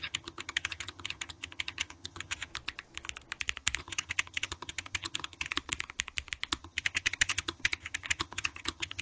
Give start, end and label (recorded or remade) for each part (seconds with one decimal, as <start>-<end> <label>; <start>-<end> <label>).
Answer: 0.0-2.5 remade; 2.5-3.8 recorded; 3.8-5.5 remade; 5.5-6.6 recorded; 6.6-9.0 remade